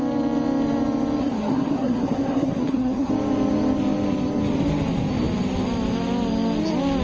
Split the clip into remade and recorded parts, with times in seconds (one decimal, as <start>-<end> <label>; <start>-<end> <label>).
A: 0.0-1.2 recorded; 1.2-3.1 remade; 3.1-7.0 recorded